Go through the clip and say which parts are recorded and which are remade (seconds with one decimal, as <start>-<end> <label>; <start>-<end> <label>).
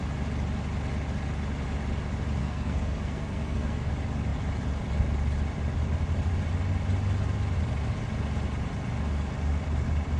0.0-2.4 recorded; 2.4-3.9 remade; 3.9-10.2 recorded